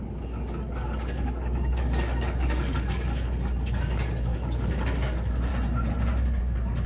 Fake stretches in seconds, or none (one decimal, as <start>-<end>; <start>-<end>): 0.0-5.5; 6.4-6.9